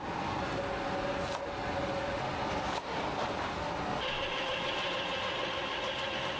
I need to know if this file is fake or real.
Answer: real